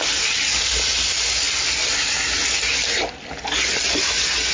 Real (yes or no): yes